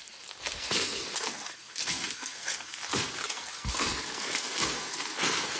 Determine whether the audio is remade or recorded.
remade